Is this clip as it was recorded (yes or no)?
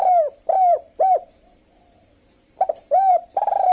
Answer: no